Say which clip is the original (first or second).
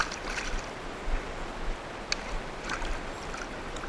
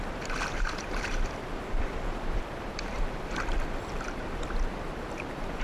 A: first